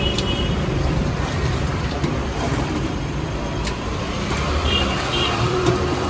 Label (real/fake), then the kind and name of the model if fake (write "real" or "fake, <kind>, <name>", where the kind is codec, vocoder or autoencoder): fake, vocoder, BigVGAN v2